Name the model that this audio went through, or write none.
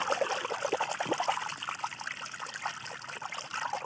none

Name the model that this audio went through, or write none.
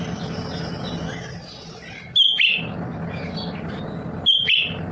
none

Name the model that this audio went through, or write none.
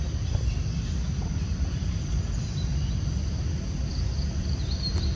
none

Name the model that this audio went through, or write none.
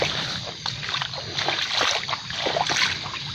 none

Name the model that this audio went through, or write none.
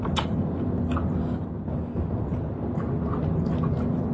none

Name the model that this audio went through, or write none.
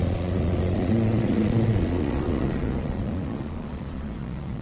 vocoder, Vocos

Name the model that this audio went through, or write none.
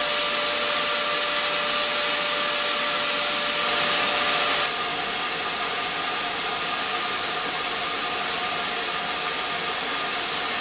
none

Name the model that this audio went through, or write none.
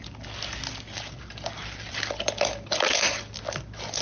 none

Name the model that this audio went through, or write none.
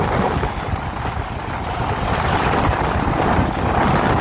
none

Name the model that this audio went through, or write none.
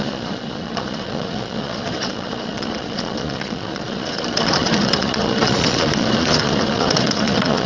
vocoder, Vocos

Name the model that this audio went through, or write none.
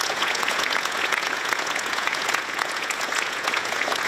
vocoder, Vocos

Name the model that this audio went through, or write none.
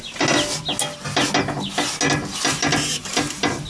none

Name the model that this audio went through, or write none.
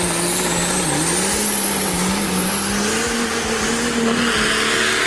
none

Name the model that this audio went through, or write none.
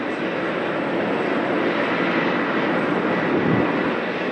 none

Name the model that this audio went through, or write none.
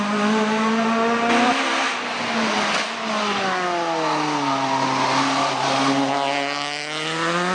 none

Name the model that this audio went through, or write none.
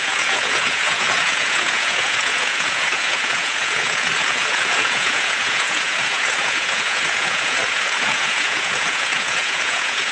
vocoder, Vocos